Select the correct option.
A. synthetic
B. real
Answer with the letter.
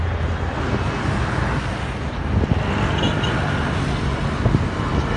B